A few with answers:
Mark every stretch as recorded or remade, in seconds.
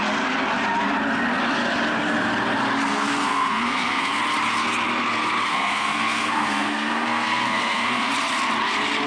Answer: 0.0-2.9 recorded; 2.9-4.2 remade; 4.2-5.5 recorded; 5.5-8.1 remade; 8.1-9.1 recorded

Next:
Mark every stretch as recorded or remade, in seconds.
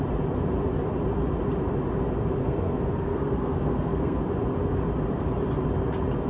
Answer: 0.0-2.4 recorded; 2.4-4.2 remade; 4.2-6.3 recorded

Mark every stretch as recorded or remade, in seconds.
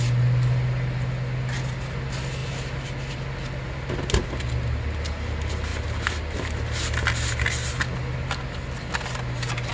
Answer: 0.0-9.7 recorded